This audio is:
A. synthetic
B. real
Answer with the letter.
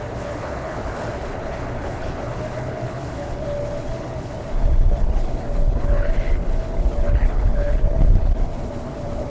A